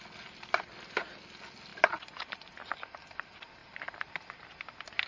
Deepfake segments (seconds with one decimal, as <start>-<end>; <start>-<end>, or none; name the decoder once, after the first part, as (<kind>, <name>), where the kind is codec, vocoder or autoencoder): 1.7-2.4 (vocoder, BigVGAN v2); 3.6-4.5